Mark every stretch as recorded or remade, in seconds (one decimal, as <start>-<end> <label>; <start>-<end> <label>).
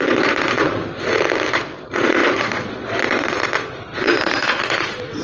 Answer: 0.0-0.8 remade; 0.8-1.5 recorded; 1.5-5.2 remade